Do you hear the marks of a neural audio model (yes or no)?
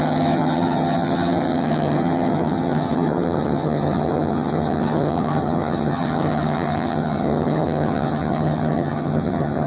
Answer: yes